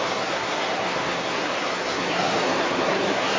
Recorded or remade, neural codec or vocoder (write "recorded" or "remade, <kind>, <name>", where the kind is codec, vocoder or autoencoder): remade, codec, SNAC